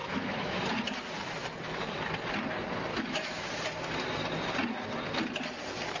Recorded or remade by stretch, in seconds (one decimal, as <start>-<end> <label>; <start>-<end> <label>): 0.0-0.6 remade; 0.6-2.9 recorded; 2.9-3.4 remade; 3.4-6.0 recorded